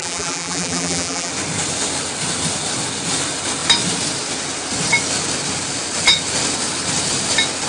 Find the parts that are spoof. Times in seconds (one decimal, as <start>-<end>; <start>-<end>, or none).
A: 0.0-1.3